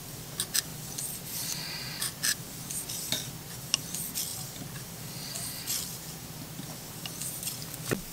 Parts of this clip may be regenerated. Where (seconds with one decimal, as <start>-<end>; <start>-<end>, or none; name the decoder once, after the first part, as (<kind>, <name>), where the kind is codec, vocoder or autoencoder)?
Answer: 0.7-1.6 (vocoder, BigVGAN v2); 4.3-4.8